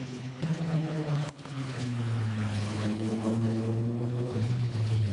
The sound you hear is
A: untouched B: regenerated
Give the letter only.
B